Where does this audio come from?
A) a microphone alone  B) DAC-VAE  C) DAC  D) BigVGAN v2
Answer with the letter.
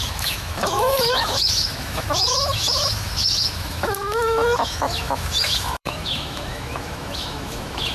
B